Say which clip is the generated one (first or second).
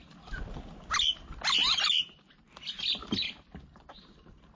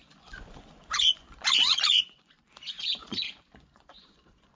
second